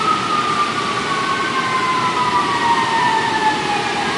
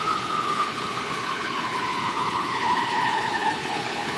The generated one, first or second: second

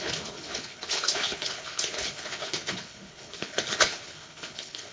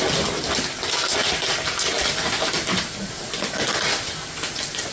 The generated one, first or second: first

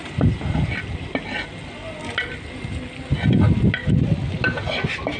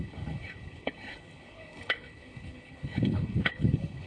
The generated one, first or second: second